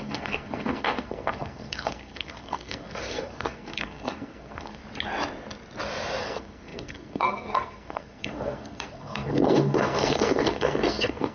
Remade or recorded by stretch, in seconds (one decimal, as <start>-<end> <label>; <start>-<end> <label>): 0.0-4.8 remade; 4.8-6.2 recorded; 6.2-11.3 remade